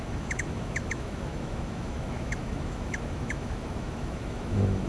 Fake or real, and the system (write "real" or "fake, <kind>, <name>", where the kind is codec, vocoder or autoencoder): fake, autoencoder, DAC-VAE